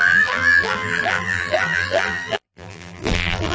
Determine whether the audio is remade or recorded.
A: remade